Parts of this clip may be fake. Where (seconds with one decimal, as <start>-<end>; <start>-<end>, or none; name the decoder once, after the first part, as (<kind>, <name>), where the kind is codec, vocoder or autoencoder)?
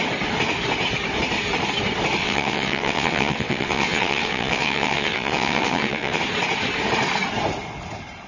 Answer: 2.2-6.2 (vocoder, WaveNeXt)